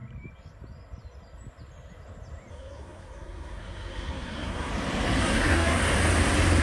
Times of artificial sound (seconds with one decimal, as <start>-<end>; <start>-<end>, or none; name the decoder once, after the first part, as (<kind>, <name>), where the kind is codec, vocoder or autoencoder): 2.5-4.7 (codec, SNAC); 5.2-5.8